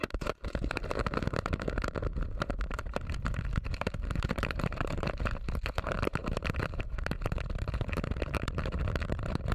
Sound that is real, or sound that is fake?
fake